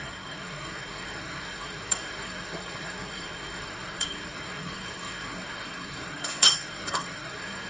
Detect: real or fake fake